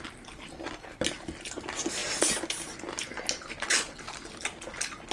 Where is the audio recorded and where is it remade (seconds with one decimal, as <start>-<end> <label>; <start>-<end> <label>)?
0.0-5.1 recorded